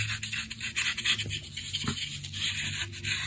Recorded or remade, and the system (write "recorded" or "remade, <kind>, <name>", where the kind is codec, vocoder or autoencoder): recorded